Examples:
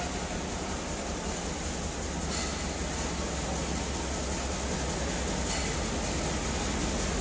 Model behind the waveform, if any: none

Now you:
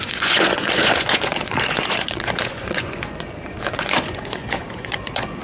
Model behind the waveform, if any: vocoder, Vocos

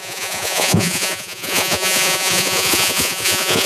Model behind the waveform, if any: vocoder, Vocos